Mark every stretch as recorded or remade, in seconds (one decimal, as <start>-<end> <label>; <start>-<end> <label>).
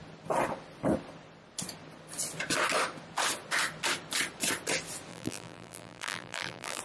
0.0-5.1 recorded; 5.1-6.8 remade